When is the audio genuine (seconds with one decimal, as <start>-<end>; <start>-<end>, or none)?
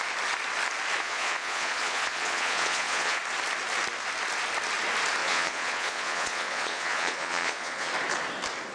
0.0-1.0; 3.2-5.2; 7.9-8.7